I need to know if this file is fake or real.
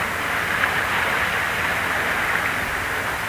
real